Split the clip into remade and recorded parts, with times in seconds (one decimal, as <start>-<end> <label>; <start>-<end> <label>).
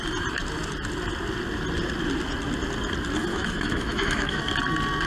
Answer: 0.0-3.3 recorded; 3.3-4.4 remade; 4.4-5.1 recorded